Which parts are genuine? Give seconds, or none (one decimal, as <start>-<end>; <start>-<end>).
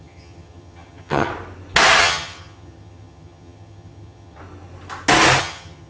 1.3-2.0; 4.4-5.4